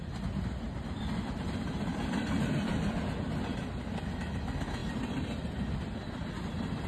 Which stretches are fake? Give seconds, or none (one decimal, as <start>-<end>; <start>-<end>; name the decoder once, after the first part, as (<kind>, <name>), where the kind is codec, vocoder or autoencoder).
none